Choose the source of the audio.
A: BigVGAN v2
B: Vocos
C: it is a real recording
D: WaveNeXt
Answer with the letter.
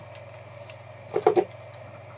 C